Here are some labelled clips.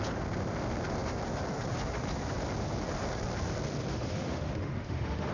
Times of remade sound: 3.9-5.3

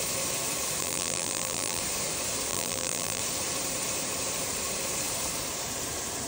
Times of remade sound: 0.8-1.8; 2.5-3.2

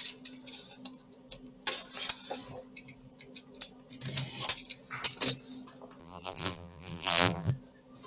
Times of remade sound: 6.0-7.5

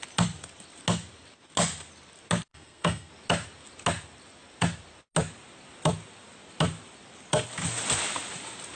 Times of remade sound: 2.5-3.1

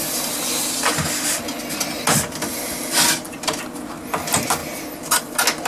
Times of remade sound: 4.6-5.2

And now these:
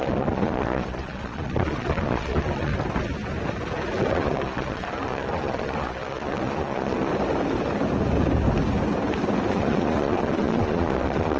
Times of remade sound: 0.0-2.7; 4.0-7.1; 9.5-11.4

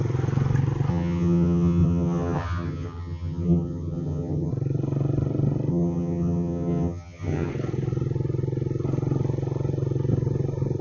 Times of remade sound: 0.9-4.5; 5.7-7.5

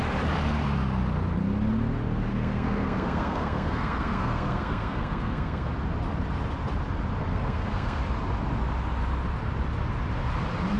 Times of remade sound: 2.3-5.7; 7.3-8.0